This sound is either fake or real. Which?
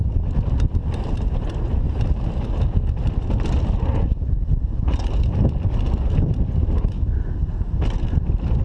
real